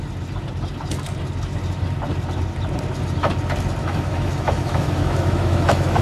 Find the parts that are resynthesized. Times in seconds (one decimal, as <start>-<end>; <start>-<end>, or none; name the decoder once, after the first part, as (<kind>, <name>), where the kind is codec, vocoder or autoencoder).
3.8-6.0 (autoencoder, DAC-VAE)